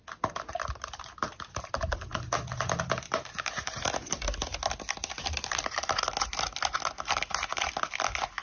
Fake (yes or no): no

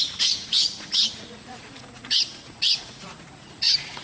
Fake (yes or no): yes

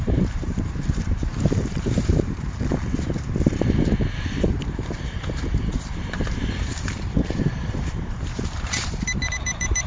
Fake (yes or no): yes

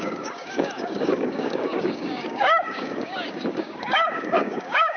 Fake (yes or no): yes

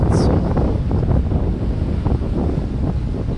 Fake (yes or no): no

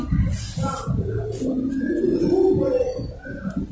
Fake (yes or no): no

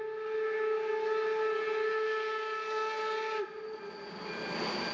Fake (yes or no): no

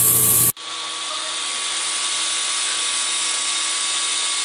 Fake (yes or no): no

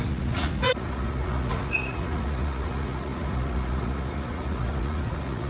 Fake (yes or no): yes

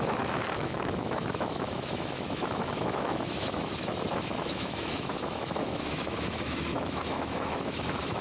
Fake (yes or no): yes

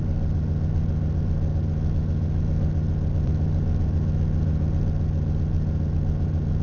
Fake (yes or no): no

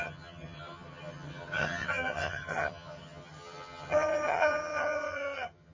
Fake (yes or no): yes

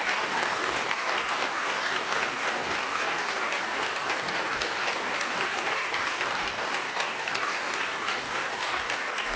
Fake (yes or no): yes